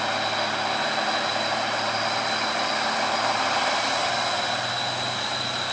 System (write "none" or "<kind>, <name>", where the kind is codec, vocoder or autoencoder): none